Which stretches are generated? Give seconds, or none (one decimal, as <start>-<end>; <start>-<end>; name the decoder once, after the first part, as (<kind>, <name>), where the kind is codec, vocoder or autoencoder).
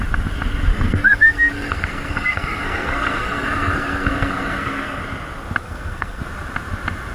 0.7-5.0 (codec, SNAC); 5.6-6.2